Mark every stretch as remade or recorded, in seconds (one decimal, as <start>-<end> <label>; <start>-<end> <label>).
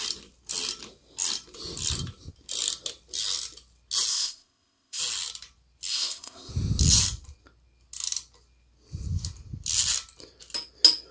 0.0-4.1 recorded; 4.1-5.0 remade; 5.0-5.9 recorded; 5.9-6.5 remade; 6.5-11.1 recorded